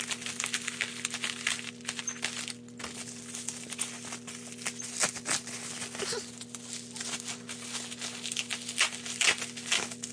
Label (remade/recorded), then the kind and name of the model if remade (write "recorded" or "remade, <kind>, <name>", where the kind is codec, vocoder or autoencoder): recorded